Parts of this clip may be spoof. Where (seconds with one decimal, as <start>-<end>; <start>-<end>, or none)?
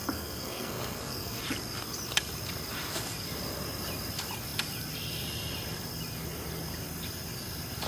0.0-1.4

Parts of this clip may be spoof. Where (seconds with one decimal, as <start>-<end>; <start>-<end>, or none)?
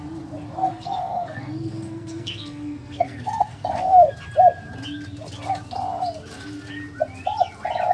0.6-4.1